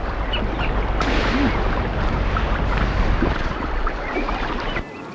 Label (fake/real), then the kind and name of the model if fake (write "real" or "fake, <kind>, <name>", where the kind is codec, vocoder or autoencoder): real